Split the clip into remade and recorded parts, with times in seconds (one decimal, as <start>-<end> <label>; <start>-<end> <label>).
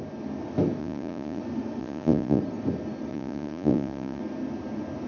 0.0-0.8 recorded; 0.8-1.4 remade; 1.4-1.8 recorded; 1.8-2.4 remade; 2.4-3.1 recorded; 3.1-4.2 remade; 4.2-5.1 recorded